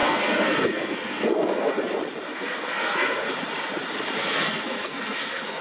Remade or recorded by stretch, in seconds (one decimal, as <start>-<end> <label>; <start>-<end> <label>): 0.0-1.8 remade; 1.8-2.3 recorded; 2.3-3.3 remade; 3.3-4.2 recorded; 4.2-5.6 remade

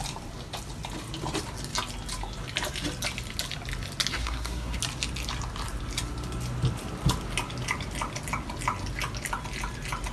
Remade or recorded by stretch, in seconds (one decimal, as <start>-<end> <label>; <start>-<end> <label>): 0.0-4.1 recorded; 4.1-4.8 remade; 4.8-10.1 recorded